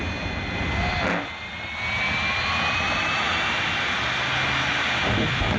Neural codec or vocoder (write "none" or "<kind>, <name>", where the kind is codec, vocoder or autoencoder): none